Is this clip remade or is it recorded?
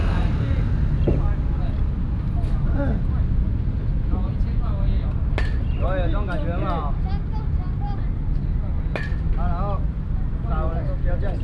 recorded